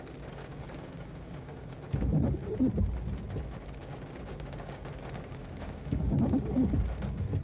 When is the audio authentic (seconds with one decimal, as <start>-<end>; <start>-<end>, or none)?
0.0-0.4; 1.7-3.8; 6.7-7.4